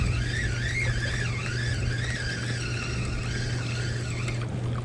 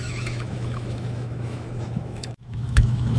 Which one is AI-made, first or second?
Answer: second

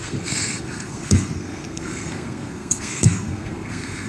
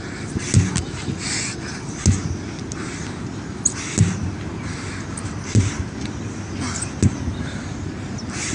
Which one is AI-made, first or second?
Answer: first